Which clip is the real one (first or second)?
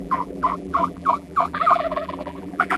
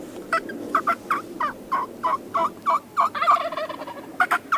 second